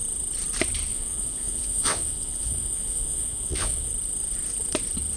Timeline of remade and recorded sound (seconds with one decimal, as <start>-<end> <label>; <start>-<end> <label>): 0.0-0.9 recorded; 0.9-3.9 remade; 3.9-5.2 recorded